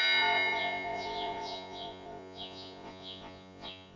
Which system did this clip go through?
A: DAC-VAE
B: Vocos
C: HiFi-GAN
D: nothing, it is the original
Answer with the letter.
B